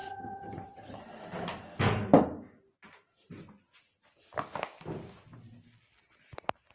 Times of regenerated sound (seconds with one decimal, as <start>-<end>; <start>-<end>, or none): 0.0-1.0